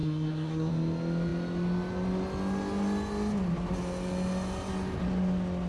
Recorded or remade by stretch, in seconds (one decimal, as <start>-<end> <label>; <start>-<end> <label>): 0.0-0.7 remade; 0.7-5.7 recorded